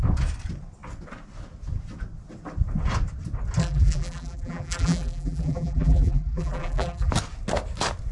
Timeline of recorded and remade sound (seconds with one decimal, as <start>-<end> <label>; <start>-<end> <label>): 0.0-3.6 recorded; 3.6-7.1 remade; 7.1-8.1 recorded